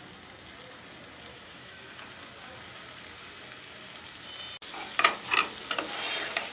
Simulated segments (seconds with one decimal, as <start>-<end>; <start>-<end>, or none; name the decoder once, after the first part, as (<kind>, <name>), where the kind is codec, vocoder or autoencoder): 1.3-2.0 (autoencoder, DAC-VAE)